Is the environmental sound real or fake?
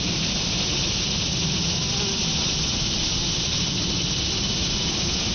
real